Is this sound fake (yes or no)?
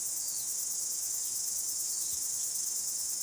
yes